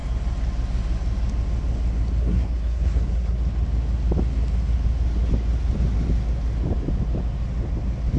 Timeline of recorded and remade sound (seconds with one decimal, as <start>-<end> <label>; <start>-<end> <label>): 0.0-2.2 recorded; 2.2-3.4 remade; 3.4-8.2 recorded